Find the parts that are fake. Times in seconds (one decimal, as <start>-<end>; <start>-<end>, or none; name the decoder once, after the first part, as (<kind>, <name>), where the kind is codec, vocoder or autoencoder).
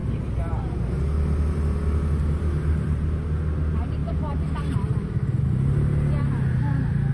none